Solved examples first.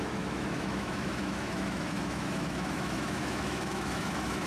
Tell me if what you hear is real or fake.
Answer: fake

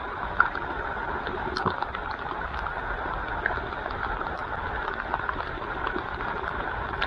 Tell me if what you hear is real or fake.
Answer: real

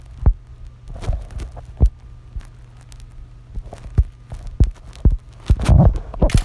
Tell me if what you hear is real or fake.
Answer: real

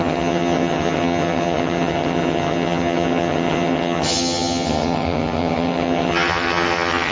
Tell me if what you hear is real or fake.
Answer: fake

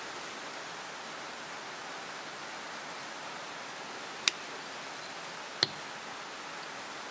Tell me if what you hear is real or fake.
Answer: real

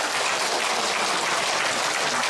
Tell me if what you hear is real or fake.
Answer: real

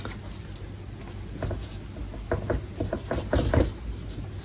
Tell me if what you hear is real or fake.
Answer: real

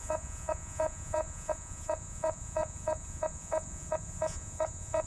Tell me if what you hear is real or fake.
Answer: fake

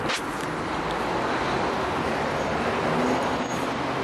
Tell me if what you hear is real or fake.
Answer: real